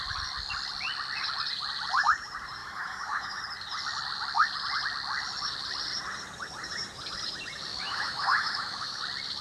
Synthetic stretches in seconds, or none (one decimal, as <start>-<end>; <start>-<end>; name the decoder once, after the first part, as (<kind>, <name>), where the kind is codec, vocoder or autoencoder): 2.6-3.4 (autoencoder, DAC-VAE); 7.7-9.0